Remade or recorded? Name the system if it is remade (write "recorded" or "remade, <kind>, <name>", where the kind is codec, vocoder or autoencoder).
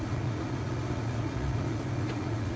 remade, vocoder, Vocos